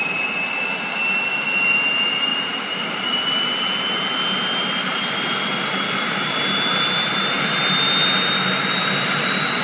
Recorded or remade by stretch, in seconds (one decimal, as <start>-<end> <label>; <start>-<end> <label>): 0.0-9.6 recorded